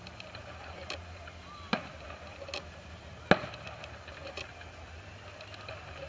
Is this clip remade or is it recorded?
recorded